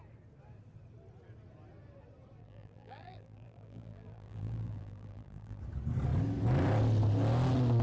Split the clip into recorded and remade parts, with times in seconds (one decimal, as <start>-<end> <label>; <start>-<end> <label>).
0.0-2.4 recorded; 2.4-5.6 remade; 5.6-7.8 recorded